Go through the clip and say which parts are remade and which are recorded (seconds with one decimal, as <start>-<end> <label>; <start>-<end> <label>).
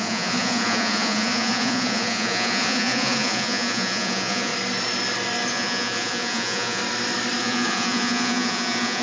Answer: 0.0-4.5 remade; 4.5-5.5 recorded; 5.5-6.8 remade; 6.8-7.4 recorded; 7.4-9.0 remade